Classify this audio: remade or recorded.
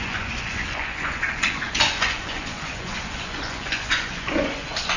remade